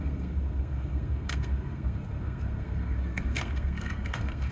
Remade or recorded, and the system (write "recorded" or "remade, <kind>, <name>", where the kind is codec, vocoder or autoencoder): remade, codec, SNAC